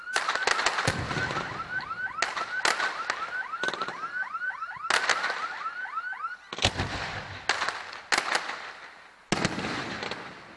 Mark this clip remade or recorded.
recorded